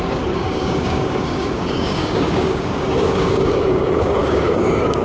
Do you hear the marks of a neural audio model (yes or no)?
yes